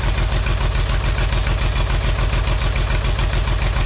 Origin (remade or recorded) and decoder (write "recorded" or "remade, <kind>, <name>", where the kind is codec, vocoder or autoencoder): recorded